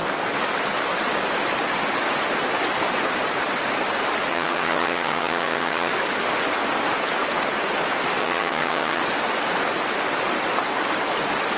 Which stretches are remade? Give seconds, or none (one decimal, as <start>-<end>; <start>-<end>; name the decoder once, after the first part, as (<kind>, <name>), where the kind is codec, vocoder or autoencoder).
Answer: 4.3-5.9 (vocoder, HiFi-GAN); 8.2-9.0